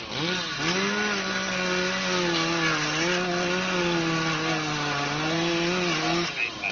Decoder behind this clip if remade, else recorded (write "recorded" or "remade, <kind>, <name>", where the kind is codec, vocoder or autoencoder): recorded